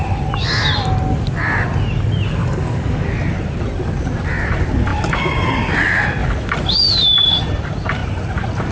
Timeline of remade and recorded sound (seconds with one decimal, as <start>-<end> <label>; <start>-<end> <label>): 0.0-2.4 recorded; 2.4-3.1 remade; 3.1-8.7 recorded